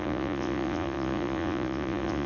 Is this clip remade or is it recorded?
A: remade